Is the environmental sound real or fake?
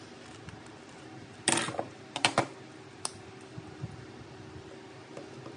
real